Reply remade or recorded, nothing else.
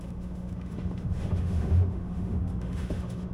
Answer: remade